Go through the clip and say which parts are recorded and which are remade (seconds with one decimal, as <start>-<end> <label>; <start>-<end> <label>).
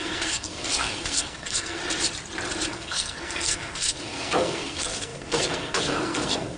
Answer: 0.0-1.8 remade; 1.8-2.7 recorded; 2.7-6.6 remade